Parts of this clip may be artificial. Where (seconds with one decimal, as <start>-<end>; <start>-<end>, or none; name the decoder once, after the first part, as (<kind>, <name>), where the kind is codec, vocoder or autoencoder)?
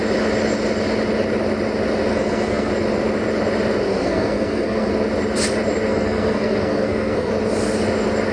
2.1-2.7 (codec, SNAC); 3.9-4.9; 5.9-7.3